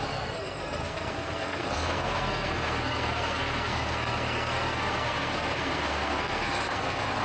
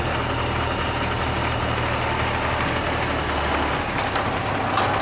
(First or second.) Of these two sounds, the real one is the second